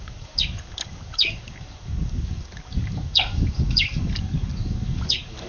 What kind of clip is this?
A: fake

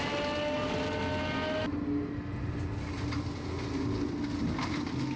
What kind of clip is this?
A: real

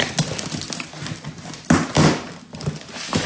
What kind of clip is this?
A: real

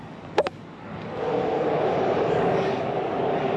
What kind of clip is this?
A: fake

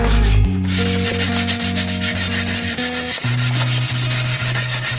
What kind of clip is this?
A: real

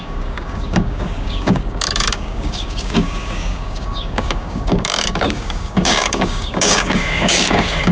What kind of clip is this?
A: fake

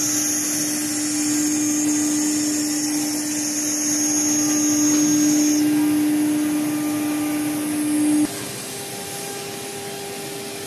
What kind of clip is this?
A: real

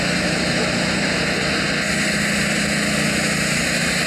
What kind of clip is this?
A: real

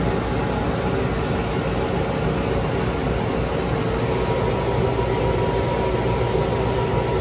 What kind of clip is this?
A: real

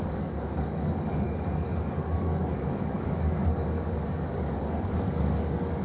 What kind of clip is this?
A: fake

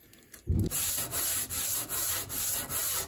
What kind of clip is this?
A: real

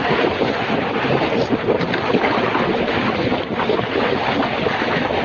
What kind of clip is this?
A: real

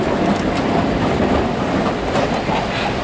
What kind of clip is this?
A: real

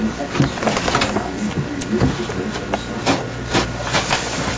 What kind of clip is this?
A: real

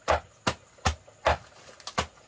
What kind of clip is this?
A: real